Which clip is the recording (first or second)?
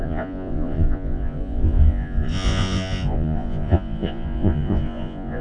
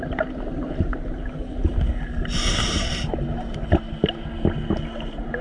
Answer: second